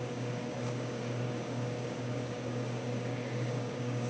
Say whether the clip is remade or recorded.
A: remade